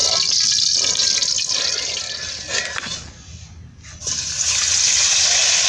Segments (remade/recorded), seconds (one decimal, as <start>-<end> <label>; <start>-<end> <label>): 0.0-5.7 recorded

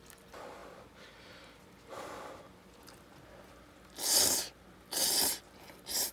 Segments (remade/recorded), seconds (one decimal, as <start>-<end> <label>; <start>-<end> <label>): 0.0-6.1 recorded